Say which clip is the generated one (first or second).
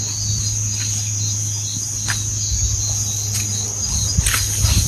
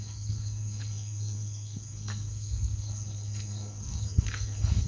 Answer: second